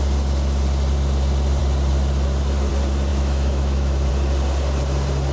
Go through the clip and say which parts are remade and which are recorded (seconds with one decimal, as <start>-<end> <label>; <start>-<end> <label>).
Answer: 0.0-3.1 recorded; 3.1-4.1 remade; 4.1-5.3 recorded